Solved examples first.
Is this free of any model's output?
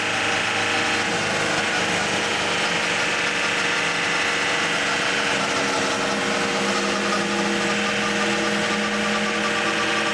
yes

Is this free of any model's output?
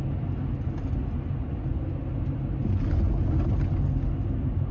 yes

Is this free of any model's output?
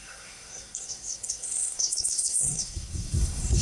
no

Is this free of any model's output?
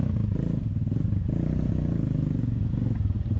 yes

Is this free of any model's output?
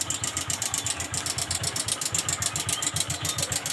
yes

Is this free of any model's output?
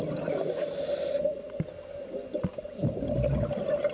yes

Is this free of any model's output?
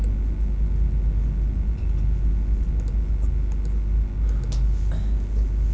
yes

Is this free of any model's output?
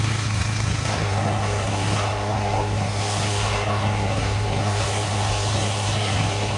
no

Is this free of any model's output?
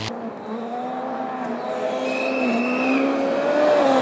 yes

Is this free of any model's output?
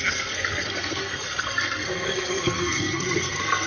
no